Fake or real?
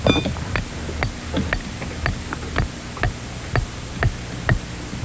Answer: real